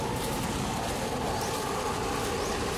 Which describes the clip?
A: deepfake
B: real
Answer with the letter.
B